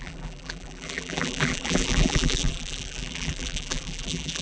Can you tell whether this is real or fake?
fake